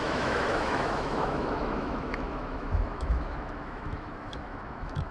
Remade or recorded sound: remade